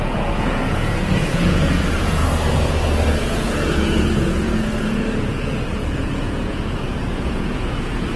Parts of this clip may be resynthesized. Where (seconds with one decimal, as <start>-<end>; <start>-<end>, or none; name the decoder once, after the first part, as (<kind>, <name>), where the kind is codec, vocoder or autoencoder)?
0.0-2.2 (vocoder, Vocos); 3.2-8.2